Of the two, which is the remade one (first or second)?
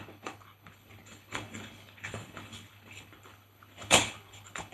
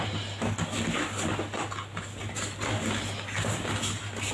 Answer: first